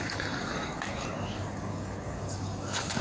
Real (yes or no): no